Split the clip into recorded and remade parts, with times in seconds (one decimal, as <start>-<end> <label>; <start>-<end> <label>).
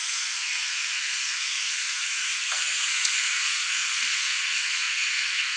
0.0-5.6 remade